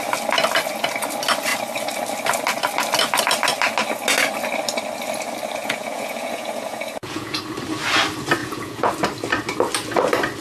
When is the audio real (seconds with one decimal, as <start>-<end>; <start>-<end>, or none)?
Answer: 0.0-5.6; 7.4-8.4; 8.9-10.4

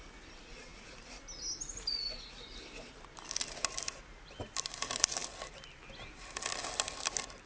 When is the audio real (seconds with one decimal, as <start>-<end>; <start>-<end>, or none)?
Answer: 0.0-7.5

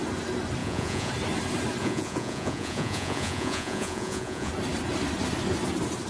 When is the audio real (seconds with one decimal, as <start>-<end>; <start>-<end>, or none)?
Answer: 0.0-0.6; 1.1-1.8; 4.5-6.1

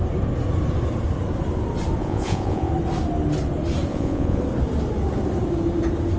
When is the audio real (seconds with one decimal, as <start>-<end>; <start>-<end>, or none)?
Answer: 0.0-2.0; 2.7-3.9; 4.4-6.2